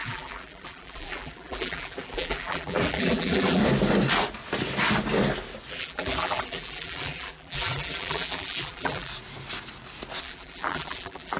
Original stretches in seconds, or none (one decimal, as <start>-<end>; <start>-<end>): 3.6-5.7; 9.1-10.2